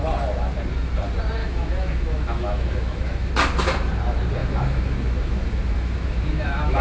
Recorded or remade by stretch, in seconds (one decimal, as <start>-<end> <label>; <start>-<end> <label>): 0.0-1.4 recorded; 1.4-3.3 remade; 3.3-4.4 recorded; 4.4-6.8 remade